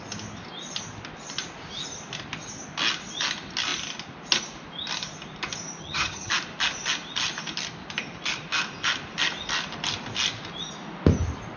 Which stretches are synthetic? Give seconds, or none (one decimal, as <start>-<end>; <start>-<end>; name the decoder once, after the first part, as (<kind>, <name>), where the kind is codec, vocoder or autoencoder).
5.8-6.3 (vocoder, HiFi-GAN)